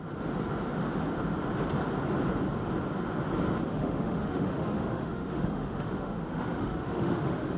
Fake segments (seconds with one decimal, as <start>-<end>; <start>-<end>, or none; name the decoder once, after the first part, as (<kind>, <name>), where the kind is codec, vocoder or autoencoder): 3.7-7.6 (autoencoder, DAC-VAE)